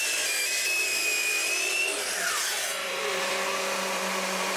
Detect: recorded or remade remade